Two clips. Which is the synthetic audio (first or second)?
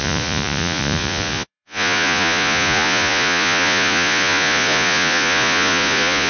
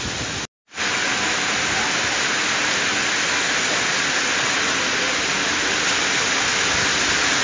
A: first